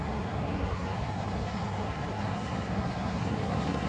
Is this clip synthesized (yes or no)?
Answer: yes